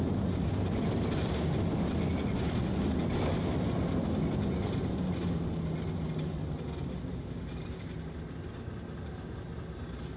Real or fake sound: real